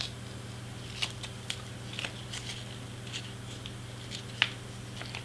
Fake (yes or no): no